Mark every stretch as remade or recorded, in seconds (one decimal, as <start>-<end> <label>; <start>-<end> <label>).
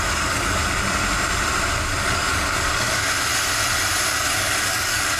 0.0-0.6 remade; 0.6-2.0 recorded; 2.0-3.3 remade; 3.3-4.2 recorded; 4.2-5.2 remade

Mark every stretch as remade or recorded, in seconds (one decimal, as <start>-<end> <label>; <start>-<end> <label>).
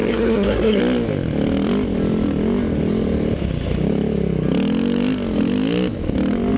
0.0-0.8 remade; 0.8-6.6 recorded